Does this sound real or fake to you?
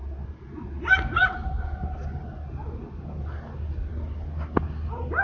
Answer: real